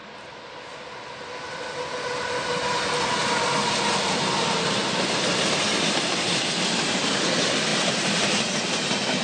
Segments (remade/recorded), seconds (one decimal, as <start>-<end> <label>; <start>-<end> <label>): 0.0-3.2 recorded; 3.2-6.4 remade; 6.4-7.7 recorded; 7.7-8.5 remade; 8.5-9.2 recorded

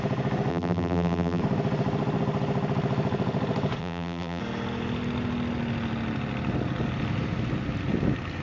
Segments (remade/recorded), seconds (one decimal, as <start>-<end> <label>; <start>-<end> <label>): 0.0-0.5 recorded; 0.5-1.4 remade; 1.4-3.8 recorded; 3.8-4.4 remade; 4.4-8.4 recorded

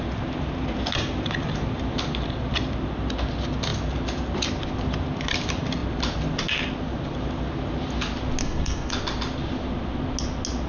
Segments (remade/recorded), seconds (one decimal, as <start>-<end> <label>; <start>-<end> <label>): 0.0-8.4 recorded; 8.4-8.9 remade; 8.9-10.7 recorded

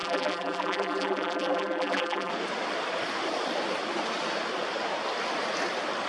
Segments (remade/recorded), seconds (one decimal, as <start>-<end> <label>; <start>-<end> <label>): 0.0-2.3 remade; 2.3-6.1 recorded

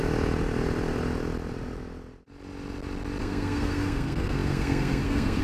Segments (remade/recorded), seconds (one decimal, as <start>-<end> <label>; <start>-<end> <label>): 0.0-3.2 recorded; 3.2-5.4 remade